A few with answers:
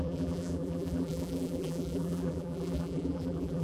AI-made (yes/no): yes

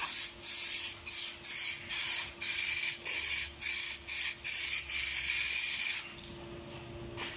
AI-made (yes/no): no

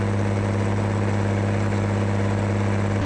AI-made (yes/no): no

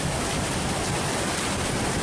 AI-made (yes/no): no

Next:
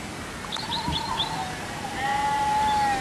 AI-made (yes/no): no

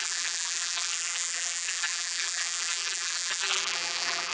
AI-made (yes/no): yes